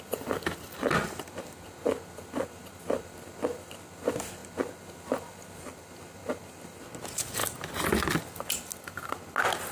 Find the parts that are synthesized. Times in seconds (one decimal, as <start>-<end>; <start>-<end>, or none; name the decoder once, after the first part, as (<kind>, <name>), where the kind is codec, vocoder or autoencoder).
none